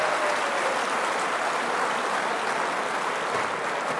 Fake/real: real